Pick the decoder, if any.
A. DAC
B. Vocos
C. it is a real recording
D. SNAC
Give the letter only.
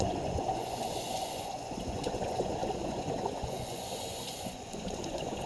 B